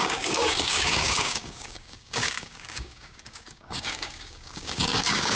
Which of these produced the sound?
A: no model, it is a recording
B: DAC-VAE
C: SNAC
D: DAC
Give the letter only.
D